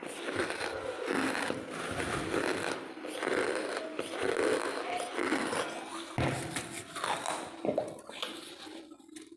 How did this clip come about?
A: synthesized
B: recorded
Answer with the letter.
B